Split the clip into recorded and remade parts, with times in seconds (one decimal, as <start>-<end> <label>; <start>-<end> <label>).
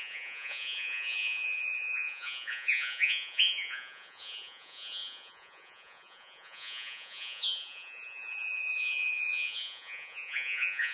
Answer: 0.0-10.9 remade